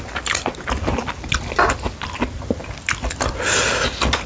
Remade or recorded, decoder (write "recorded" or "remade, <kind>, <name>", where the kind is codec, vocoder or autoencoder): recorded